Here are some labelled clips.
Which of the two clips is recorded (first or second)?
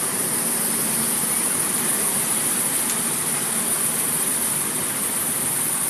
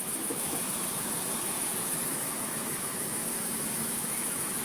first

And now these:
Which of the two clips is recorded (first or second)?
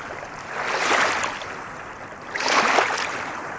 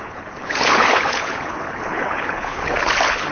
first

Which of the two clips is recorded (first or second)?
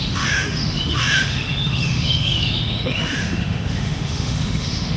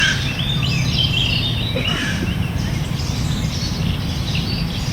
second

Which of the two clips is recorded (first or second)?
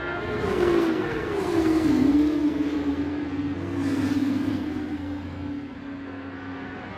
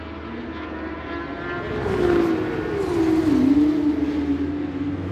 second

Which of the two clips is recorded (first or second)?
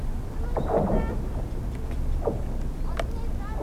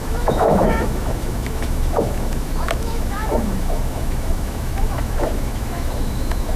first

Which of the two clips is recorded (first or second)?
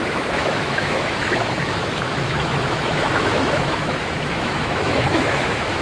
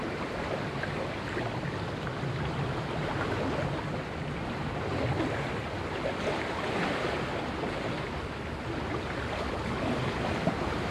second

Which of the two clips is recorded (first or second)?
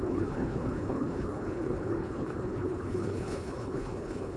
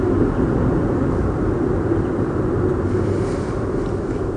second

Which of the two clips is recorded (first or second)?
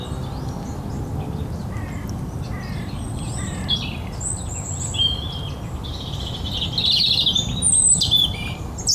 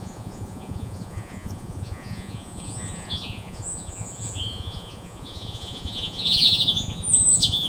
first